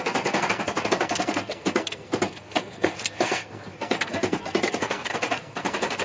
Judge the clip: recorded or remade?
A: remade